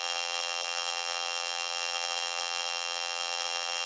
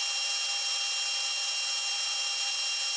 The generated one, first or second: first